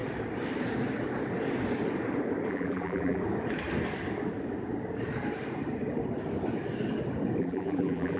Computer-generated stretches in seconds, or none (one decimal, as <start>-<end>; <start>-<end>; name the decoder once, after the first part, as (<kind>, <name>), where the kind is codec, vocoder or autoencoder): 2.5-3.2 (vocoder, BigVGAN v2); 7.4-8.2